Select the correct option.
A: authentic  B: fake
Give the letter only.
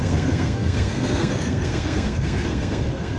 B